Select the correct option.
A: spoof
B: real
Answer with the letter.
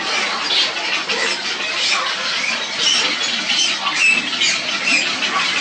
B